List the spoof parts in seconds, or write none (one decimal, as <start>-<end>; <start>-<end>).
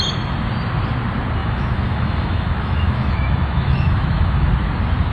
1.4-4.5